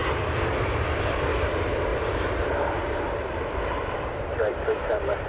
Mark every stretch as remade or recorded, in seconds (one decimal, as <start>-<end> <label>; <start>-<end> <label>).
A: 0.0-1.9 recorded; 1.9-5.3 remade